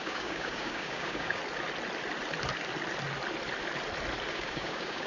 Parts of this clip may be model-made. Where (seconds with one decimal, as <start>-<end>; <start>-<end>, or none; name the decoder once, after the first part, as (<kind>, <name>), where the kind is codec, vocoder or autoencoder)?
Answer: 0.0-1.4 (codec, DAC); 4.3-5.1